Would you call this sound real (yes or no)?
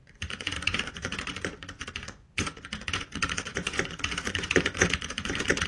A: no